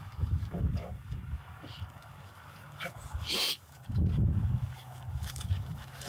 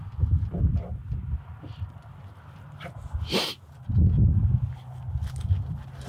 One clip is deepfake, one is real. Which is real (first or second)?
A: second